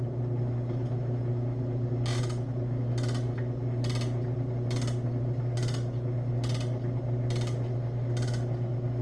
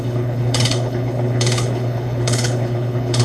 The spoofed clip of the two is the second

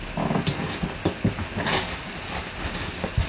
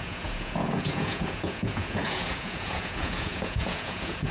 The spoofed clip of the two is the second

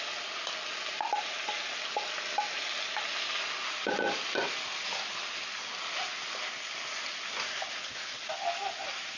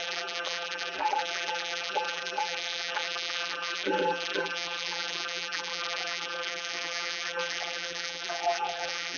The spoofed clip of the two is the second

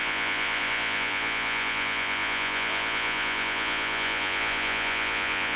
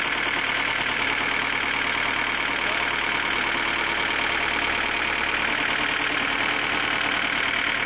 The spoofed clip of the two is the first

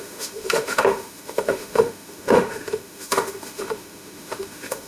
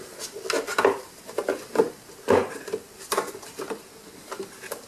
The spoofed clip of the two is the first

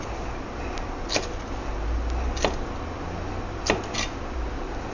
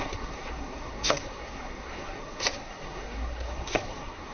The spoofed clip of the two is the second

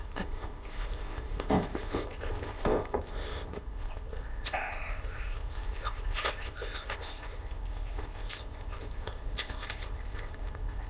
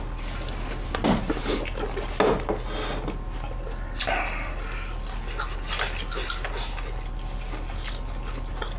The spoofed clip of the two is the first